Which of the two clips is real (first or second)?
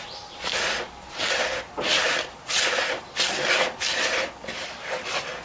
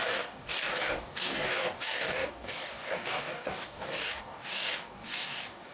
first